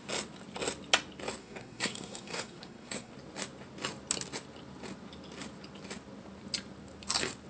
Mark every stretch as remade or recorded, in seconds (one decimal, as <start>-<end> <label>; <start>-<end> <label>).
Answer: 0.0-1.4 recorded; 1.4-3.1 remade; 3.1-7.5 recorded